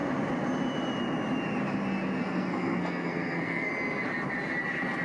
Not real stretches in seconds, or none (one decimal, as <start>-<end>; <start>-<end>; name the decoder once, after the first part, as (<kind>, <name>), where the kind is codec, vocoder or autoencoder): 2.2-3.7 (codec, SNAC)